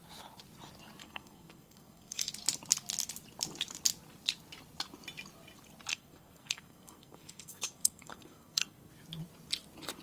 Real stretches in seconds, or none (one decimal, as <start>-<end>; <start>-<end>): 0.0-1.0; 2.3-5.9; 8.9-10.0